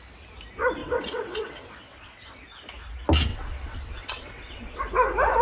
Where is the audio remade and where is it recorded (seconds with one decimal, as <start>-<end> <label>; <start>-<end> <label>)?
0.0-0.8 recorded; 0.8-2.4 remade; 2.4-3.3 recorded; 3.3-4.8 remade; 4.8-5.4 recorded